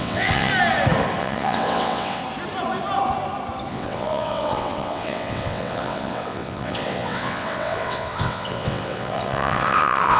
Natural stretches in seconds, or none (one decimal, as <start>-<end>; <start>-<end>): 0.5-1.2; 2.2-3.7